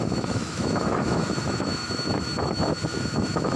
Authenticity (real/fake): fake